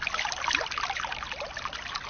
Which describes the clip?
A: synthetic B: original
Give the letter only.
B